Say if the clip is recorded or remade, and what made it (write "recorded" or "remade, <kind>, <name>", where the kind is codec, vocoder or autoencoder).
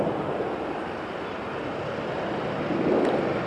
recorded